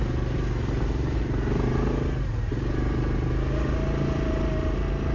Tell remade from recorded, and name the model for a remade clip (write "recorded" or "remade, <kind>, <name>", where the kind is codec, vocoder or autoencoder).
recorded